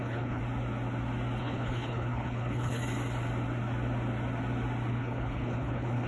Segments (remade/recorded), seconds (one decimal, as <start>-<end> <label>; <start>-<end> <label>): 0.0-0.4 remade; 0.4-1.4 recorded; 1.4-2.8 remade; 2.8-4.9 recorded; 4.9-6.1 remade